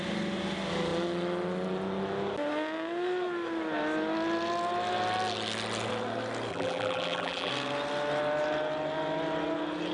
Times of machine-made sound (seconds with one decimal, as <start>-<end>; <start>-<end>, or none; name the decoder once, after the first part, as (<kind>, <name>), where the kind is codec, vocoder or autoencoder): 6.5-7.5 (vocoder, BigVGAN v2)